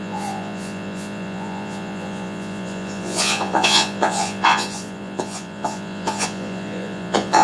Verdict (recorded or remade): remade